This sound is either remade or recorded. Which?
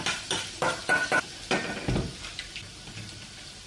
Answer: recorded